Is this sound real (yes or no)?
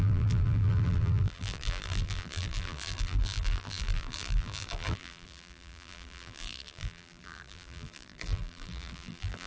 no